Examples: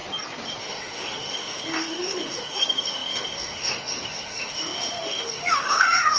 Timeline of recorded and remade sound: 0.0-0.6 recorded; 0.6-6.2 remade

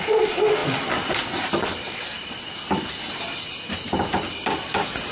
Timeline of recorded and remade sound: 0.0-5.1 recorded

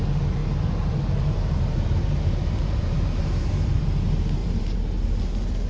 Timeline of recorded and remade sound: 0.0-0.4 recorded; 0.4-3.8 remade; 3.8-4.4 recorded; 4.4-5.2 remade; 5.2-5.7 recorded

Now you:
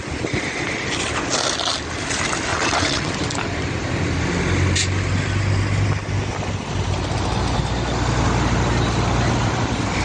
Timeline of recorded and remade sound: 0.0-2.5 recorded; 2.5-3.1 remade; 3.1-10.0 recorded

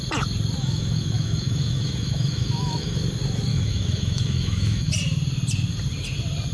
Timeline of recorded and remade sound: 0.0-0.6 recorded; 0.6-3.0 remade; 3.0-3.5 recorded; 3.5-4.9 remade; 4.9-6.5 recorded

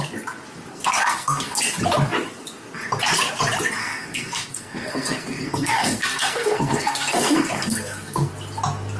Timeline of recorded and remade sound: 0.0-0.7 recorded; 0.7-1.6 remade; 1.6-3.8 recorded; 3.8-8.3 remade; 8.3-9.0 recorded